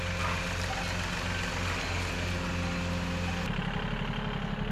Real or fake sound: real